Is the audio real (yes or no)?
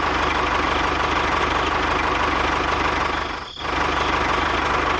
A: yes